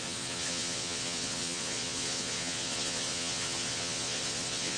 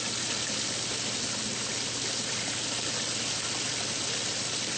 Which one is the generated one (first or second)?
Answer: first